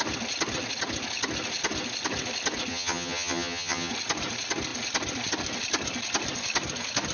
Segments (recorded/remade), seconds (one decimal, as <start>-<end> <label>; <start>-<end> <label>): 0.0-2.7 recorded; 2.7-3.9 remade; 3.9-7.1 recorded